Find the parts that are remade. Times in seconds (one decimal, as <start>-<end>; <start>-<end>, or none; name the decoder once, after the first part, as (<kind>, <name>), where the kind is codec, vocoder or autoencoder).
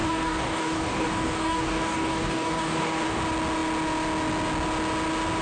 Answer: 0.0-3.2 (codec, DAC)